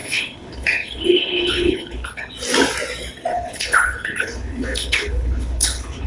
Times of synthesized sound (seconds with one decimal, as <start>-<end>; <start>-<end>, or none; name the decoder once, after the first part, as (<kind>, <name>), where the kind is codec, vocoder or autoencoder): 0.0-2.3 (codec, HILCodec); 3.3-6.1